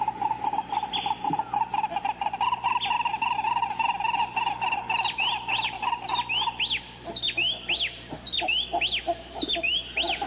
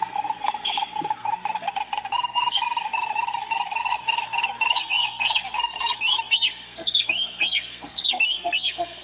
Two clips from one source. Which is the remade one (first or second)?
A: second